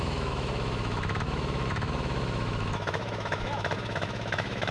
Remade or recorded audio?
remade